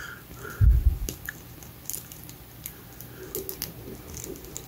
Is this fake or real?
real